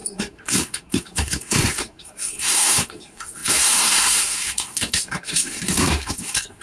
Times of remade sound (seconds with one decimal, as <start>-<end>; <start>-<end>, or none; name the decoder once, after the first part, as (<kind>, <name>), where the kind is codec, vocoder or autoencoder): 0.0-6.6 (codec, SNAC)